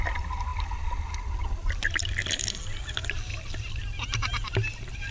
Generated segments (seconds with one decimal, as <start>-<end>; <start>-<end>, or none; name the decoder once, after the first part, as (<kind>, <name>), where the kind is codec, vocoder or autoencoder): none